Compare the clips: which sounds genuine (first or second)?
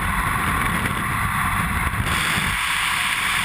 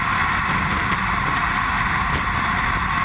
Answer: second